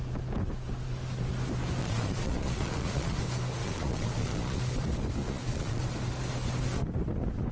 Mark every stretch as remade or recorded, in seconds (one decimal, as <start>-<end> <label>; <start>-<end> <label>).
0.0-1.8 recorded; 1.8-3.2 remade; 3.2-3.6 recorded; 3.6-4.6 remade; 4.6-5.2 recorded; 5.2-5.8 remade; 5.8-7.5 recorded

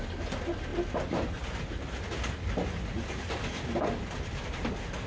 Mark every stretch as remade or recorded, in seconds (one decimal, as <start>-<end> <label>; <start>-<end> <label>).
0.0-5.1 recorded

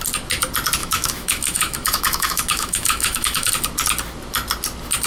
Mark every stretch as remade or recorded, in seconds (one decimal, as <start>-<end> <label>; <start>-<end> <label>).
0.0-0.8 recorded; 0.8-3.5 remade; 3.5-5.1 recorded

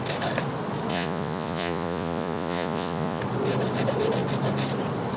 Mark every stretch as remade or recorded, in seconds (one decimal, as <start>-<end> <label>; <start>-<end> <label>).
0.0-0.9 recorded; 0.9-3.2 remade; 3.2-5.2 recorded

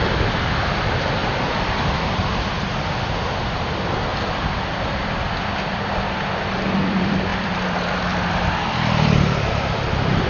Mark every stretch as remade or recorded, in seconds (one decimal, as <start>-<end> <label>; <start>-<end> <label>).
0.0-4.1 remade; 4.1-4.9 recorded; 4.9-10.3 remade

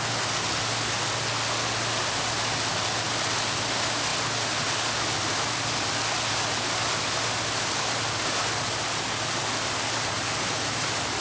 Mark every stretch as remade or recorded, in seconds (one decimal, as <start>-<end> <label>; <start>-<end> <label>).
0.0-11.2 recorded

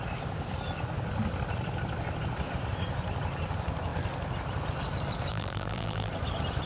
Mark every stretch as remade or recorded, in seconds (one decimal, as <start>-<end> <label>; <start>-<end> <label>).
0.0-5.3 recorded; 5.3-6.1 remade; 6.1-6.7 recorded

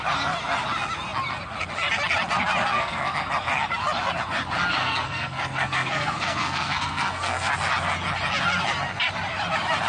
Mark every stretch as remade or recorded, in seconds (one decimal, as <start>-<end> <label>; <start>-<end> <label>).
0.0-2.6 recorded; 2.6-3.3 remade; 3.3-4.8 recorded; 4.8-7.5 remade; 7.5-9.9 recorded